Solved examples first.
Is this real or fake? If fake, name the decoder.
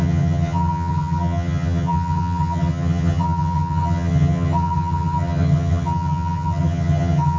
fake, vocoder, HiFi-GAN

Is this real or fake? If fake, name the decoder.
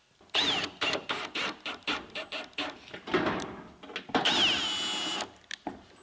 real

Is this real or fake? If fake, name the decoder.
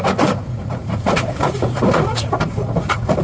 fake, vocoder, Vocos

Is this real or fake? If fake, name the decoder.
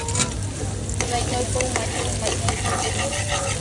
real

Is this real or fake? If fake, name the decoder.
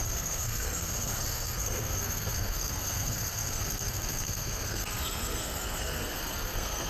fake, codec, SNAC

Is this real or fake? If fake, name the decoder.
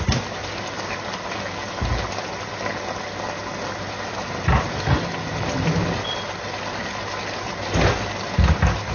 real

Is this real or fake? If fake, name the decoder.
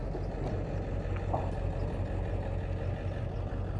real